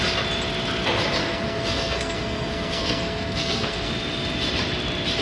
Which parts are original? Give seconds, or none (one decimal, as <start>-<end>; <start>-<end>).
0.0-1.2; 3.9-5.2

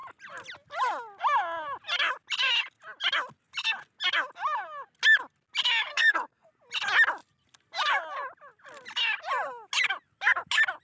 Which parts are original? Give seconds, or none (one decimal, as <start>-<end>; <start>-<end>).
0.0-5.9; 6.5-10.8

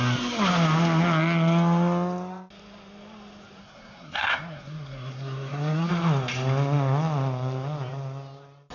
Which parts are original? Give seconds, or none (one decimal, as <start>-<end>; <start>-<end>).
0.0-3.6; 5.9-8.7

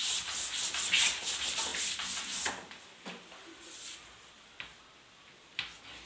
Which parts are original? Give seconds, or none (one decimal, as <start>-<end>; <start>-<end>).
0.0-6.1

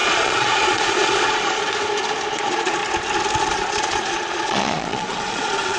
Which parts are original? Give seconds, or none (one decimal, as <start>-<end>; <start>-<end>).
1.6-2.3; 2.8-3.4

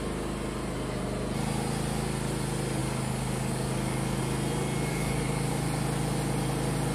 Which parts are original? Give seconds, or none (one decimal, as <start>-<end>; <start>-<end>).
0.0-2.8; 4.2-4.9; 5.5-6.9